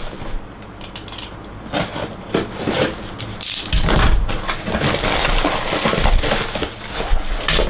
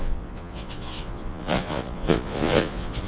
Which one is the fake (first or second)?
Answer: second